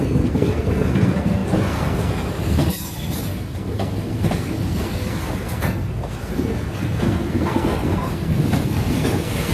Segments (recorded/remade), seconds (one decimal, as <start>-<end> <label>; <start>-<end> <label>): 0.0-9.5 remade